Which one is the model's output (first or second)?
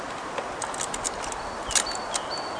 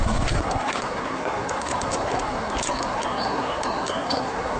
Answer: second